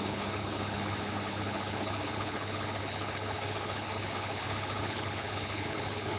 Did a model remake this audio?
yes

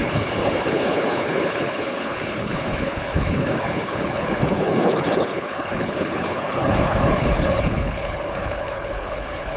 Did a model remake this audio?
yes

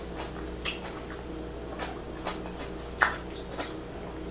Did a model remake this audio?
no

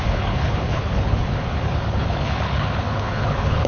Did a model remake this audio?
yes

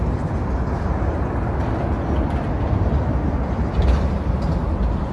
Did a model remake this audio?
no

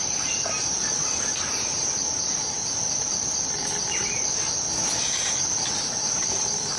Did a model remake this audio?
no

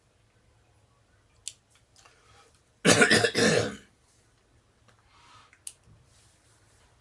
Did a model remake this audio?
no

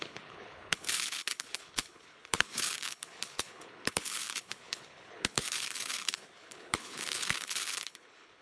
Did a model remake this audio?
yes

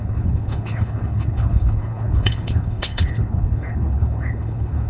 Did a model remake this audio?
yes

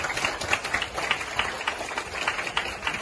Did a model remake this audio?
no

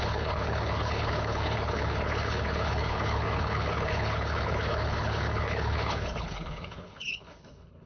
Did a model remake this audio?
yes